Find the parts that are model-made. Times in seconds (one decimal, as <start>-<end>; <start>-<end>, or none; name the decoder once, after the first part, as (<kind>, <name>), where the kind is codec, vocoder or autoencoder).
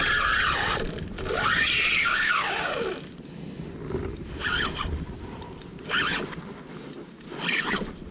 2.0-2.7 (codec, DAC)